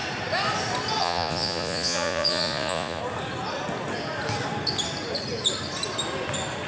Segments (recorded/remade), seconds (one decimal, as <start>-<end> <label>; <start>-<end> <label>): 0.0-1.0 recorded; 1.0-3.0 remade; 3.0-6.7 recorded